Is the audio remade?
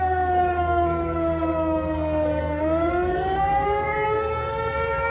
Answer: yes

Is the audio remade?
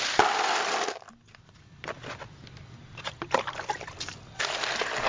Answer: no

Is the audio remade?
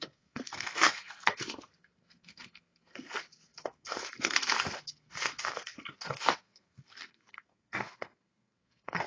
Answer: yes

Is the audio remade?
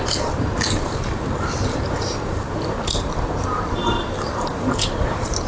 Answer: yes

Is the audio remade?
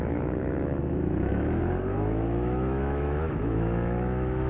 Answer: yes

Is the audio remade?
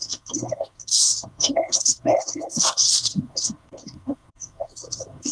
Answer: yes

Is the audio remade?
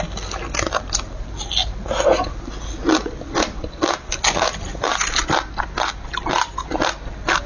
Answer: no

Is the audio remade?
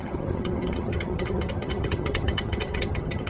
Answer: yes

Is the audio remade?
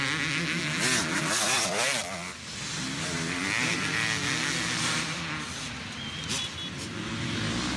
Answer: no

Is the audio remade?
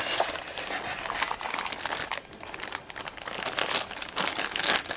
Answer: no